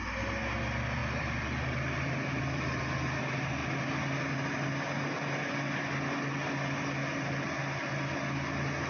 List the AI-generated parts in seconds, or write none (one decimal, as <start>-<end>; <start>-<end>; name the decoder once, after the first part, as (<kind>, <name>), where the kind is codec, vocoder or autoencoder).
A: 1.0-2.8 (vocoder, BigVGAN v2)